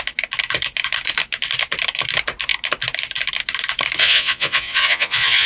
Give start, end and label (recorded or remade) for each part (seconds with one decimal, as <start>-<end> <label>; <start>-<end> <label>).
0.0-4.0 recorded; 4.0-5.5 remade